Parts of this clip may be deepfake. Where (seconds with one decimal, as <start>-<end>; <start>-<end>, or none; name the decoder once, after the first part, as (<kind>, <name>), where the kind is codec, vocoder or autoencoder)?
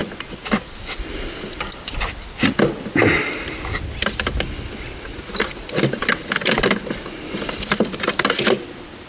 none